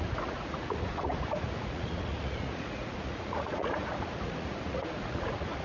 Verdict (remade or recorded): remade